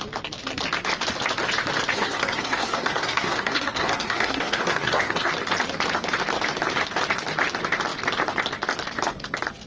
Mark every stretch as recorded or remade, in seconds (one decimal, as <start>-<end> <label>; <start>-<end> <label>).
0.0-1.9 recorded; 1.9-5.3 remade; 5.3-9.7 recorded